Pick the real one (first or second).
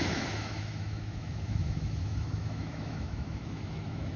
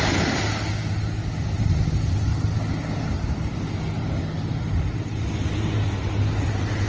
second